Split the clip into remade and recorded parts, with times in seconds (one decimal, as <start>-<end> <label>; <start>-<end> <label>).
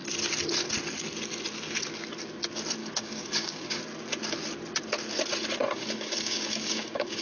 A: 0.0-2.8 recorded; 2.8-3.8 remade; 3.8-5.6 recorded; 5.6-7.2 remade